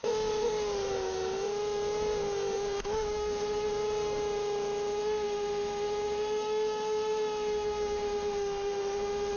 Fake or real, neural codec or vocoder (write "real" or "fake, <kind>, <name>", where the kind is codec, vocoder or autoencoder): fake, autoencoder, DAC-VAE